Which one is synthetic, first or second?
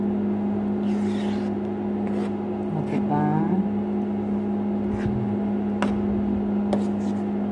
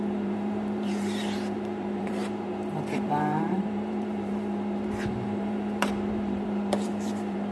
second